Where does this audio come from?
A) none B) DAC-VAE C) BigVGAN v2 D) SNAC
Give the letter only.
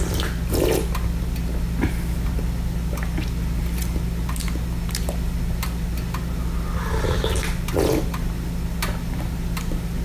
A